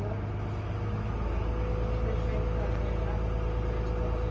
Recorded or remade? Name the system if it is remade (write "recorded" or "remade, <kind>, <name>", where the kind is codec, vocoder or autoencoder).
recorded